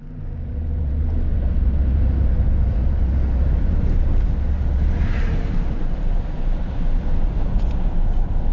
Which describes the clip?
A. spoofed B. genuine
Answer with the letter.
A